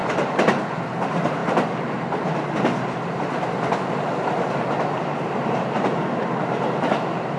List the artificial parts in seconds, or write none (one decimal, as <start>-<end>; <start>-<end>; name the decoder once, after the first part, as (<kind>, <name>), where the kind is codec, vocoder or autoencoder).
0.0-1.4 (vocoder, BigVGAN v2); 5.5-7.4